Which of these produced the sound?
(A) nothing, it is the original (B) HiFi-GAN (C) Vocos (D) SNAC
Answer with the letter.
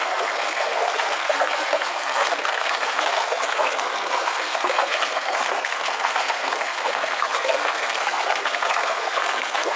D